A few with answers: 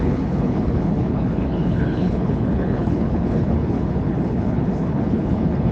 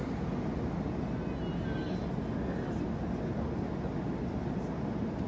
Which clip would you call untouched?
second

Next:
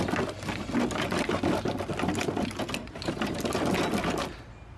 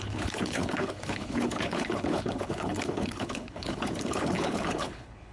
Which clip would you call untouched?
first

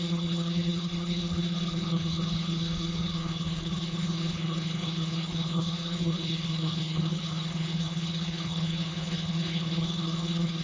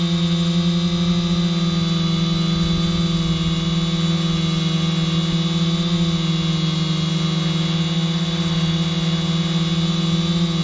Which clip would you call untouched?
second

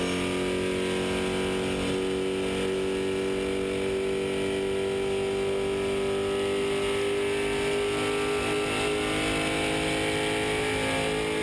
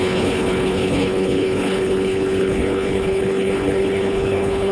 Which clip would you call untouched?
first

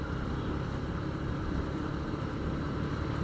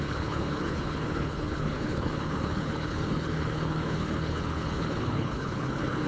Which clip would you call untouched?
first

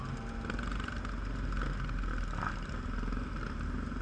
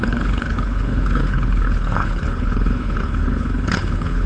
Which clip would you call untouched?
first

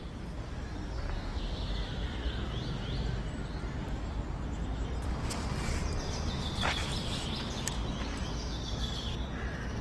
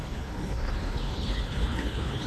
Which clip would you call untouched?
first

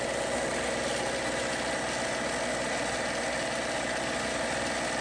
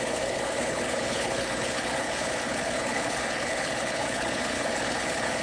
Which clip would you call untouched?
first